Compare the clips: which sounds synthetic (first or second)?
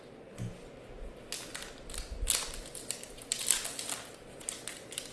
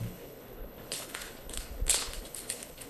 second